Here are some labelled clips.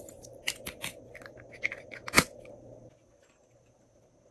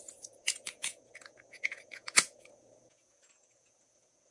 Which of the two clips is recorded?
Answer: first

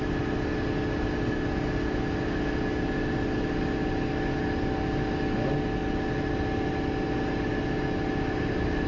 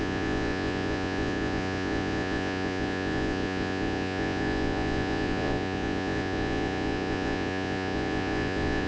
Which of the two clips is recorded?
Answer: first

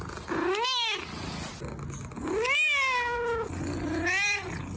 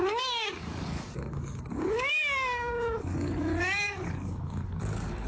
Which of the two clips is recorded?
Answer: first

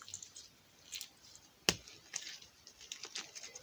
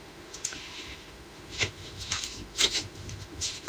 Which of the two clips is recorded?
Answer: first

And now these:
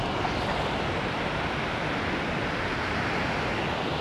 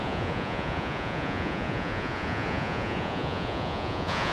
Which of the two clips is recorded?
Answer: first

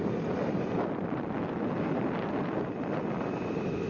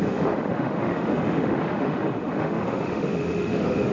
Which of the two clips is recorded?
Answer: first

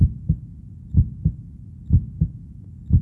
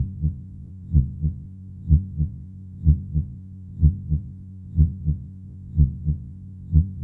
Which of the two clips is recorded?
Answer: first